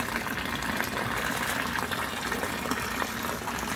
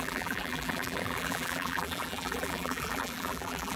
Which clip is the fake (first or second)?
second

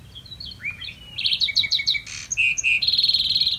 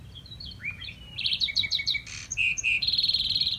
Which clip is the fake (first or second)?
second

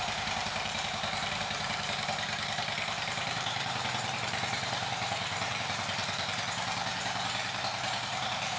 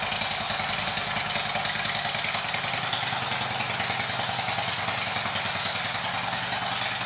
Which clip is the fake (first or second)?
first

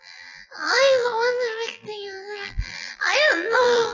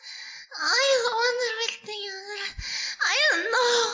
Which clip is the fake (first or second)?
first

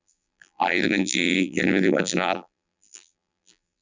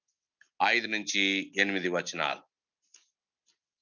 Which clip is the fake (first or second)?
first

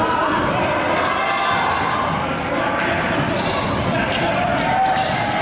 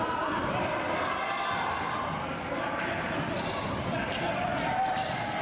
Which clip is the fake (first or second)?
second